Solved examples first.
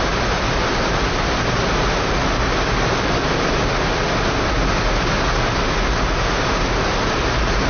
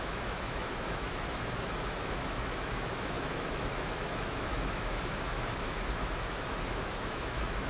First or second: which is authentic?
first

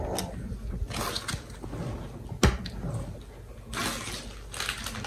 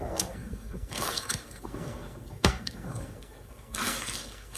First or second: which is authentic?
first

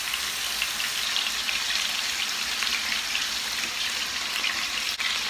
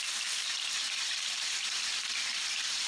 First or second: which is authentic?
first